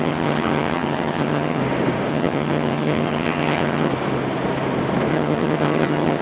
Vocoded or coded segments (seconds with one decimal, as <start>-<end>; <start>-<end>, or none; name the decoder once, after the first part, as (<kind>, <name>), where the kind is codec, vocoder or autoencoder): 0.0-1.6 (vocoder, HiFi-GAN); 2.1-3.9; 5.1-6.2